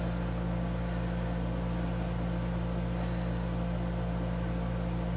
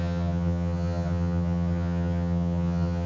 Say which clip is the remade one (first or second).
second